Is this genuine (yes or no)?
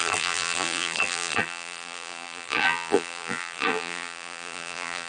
no